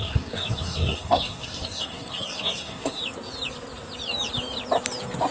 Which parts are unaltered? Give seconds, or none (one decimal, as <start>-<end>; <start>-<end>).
3.0-5.3